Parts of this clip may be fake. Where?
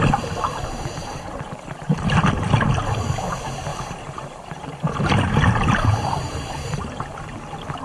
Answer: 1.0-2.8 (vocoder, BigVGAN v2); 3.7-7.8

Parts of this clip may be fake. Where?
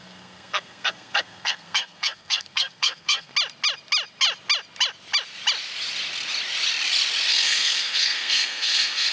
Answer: 0.0-3.3 (codec, SNAC); 7.3-9.1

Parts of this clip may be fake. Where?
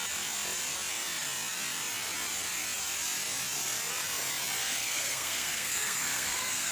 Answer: 4.6-6.7 (codec, SNAC)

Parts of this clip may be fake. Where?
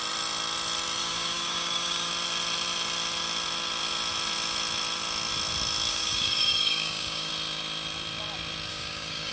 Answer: 1.0-2.1 (codec, DAC); 5.9-7.3; 8.7-9.3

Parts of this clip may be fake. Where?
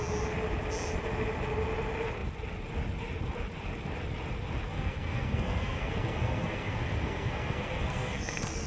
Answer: 4.7-8.7 (codec, SNAC)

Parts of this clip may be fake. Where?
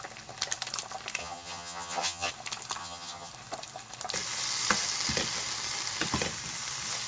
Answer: 1.2-2.3 (vocoder, HiFi-GAN); 2.8-3.3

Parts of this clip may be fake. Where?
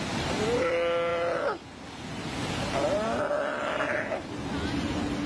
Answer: none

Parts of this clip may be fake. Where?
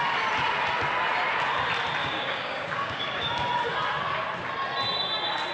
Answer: 2.0-3.3 (codec, DAC)